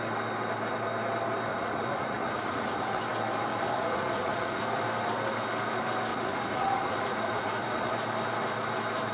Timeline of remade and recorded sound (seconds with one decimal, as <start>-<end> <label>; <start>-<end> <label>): 0.0-1.5 recorded; 1.5-3.0 remade; 3.0-3.5 recorded; 3.5-4.6 remade; 4.6-6.1 recorded; 6.1-7.9 remade; 7.9-9.1 recorded

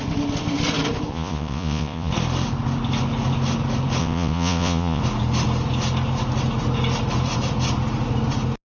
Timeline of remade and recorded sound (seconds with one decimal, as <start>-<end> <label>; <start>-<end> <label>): 0.0-1.1 recorded; 1.1-2.1 remade; 2.1-4.0 recorded; 4.0-5.0 remade; 5.0-8.6 recorded